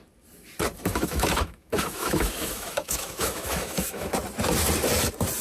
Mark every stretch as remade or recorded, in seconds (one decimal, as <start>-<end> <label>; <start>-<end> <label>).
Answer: 0.0-0.9 recorded; 0.9-4.1 remade; 4.1-5.4 recorded